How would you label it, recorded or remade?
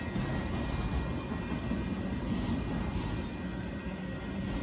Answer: recorded